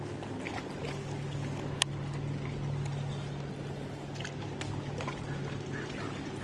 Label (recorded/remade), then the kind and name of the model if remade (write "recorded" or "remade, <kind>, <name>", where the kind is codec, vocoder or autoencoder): recorded